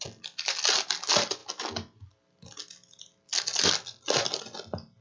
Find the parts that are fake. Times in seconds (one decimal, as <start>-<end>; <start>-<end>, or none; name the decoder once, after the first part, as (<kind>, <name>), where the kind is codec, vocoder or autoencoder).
none